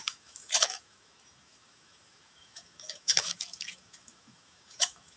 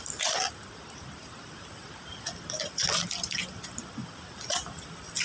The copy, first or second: first